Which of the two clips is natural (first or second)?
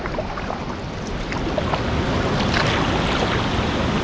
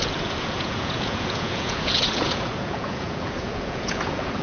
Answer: first